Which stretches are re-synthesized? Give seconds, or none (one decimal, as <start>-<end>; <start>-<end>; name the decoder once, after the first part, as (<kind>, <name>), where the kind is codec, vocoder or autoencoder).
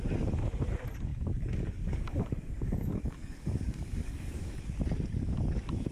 1.1-4.6 (codec, DAC)